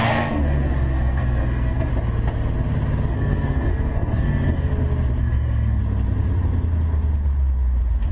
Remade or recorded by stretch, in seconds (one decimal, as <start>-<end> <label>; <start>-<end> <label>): 0.0-1.9 remade; 1.9-3.1 recorded; 3.1-4.7 remade; 4.7-5.2 recorded; 5.2-5.8 remade; 5.8-8.1 recorded